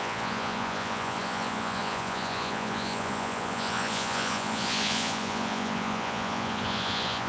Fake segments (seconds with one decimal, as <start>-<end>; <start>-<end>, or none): 0.0-7.3